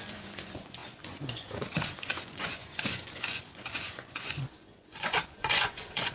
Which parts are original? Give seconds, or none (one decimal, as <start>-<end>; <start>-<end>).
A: none